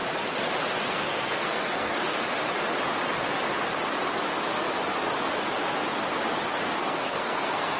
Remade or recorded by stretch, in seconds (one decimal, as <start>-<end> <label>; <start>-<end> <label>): 0.0-0.8 recorded; 0.8-2.1 remade; 2.1-6.8 recorded; 6.8-7.8 remade